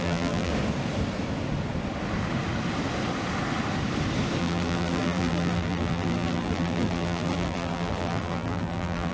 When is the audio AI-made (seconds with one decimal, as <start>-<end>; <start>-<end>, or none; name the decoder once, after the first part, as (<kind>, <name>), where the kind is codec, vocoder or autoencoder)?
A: 0.0-0.5 (vocoder, BigVGAN v2); 4.4-9.1